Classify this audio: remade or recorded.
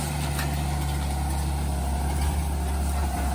recorded